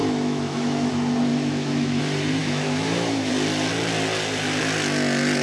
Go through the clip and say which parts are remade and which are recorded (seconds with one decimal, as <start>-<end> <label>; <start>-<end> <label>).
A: 0.0-0.9 remade; 0.9-1.3 recorded; 1.3-2.0 remade; 2.0-2.4 recorded; 2.4-3.3 remade; 3.3-5.4 recorded